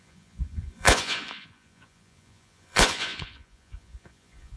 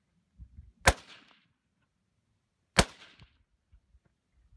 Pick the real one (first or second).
second